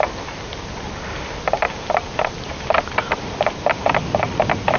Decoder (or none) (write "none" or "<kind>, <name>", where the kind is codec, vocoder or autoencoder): none